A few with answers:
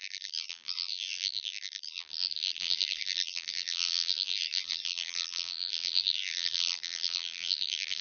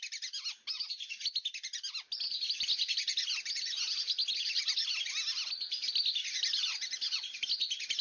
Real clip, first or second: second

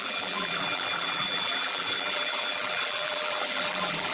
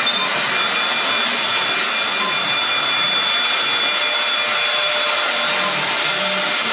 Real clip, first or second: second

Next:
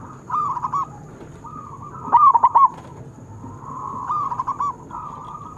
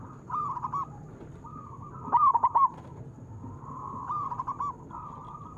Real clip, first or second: first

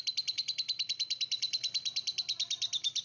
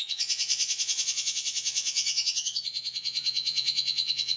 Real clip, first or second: first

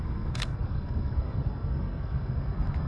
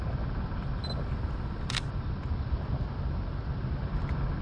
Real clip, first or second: second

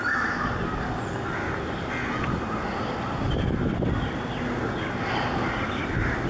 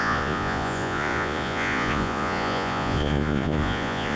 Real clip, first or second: first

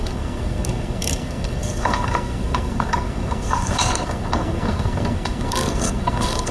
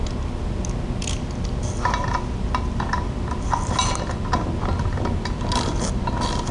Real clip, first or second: second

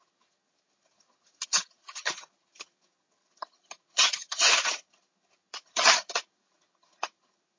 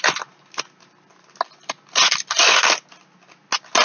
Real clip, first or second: second